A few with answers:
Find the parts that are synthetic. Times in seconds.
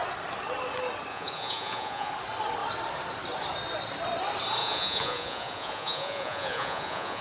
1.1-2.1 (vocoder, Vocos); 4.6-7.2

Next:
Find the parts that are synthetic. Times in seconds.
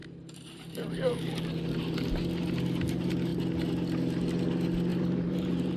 0.0-1.4 (vocoder, BigVGAN v2); 4.9-5.8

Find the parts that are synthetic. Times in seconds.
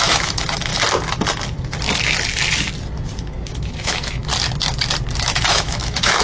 0.0-0.7 (autoencoder, DAC-VAE); 3.2-4.3; 5.2-6.2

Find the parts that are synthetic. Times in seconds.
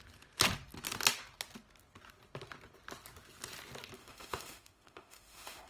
4.0-5.7 (autoencoder, DAC-VAE)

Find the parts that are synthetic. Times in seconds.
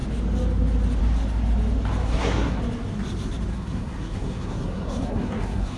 2.0-2.6 (codec, SNAC); 3.5-5.8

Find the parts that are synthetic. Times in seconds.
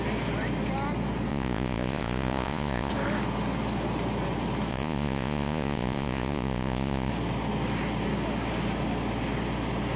1.3-2.9 (vocoder, Vocos); 4.7-7.1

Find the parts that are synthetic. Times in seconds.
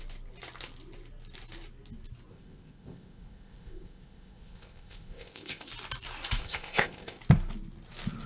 2.3-5.7 (codec, ZipCodec); 6.4-7.2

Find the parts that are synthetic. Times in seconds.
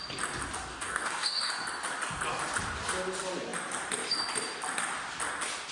0.7-1.5 (codec, DAC)